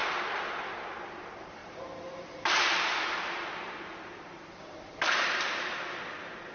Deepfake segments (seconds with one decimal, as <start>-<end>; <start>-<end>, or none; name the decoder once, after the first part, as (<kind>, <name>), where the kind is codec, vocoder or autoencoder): 1.1-6.5 (vocoder, BigVGAN v2)